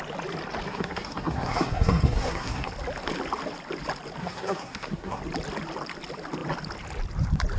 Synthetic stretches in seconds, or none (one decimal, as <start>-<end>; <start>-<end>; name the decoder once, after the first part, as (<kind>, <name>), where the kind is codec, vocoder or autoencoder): 0.7-2.7 (codec, SNAC); 4.2-5.2